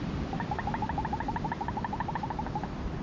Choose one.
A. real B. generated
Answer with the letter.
B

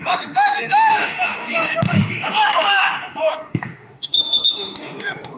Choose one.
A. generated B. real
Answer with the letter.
A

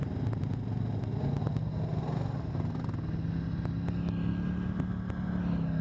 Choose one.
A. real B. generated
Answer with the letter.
A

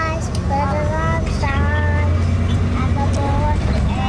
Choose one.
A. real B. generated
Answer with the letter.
A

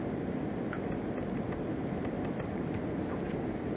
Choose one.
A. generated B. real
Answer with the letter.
B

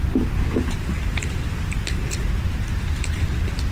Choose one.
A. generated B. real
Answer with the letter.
A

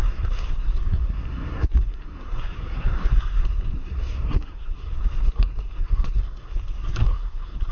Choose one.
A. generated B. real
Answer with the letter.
A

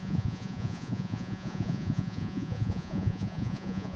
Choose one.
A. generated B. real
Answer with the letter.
A